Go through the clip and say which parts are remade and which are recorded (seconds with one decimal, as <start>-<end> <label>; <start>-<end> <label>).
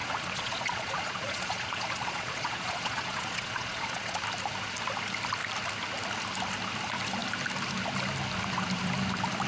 0.0-4.2 remade; 4.2-9.5 recorded